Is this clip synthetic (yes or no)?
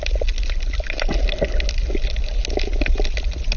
no